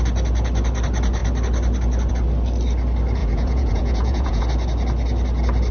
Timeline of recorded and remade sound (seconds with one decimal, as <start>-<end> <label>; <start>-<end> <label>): 0.0-3.2 recorded; 3.2-4.4 remade; 4.4-5.7 recorded